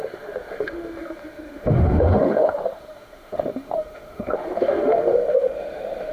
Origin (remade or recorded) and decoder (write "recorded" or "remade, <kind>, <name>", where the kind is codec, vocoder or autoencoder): remade, autoencoder, DAC-VAE